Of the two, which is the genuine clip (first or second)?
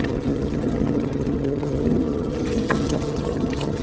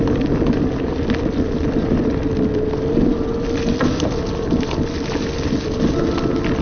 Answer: second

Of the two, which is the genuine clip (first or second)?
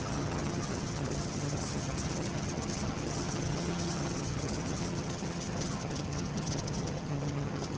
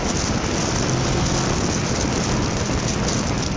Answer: second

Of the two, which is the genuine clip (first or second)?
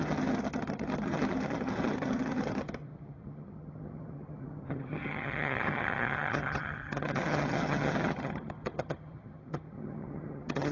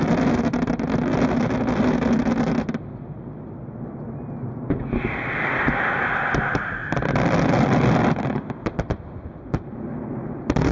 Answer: second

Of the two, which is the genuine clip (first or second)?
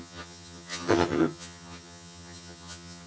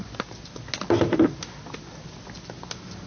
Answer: second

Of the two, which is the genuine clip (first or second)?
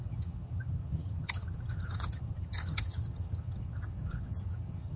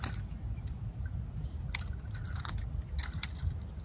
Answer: second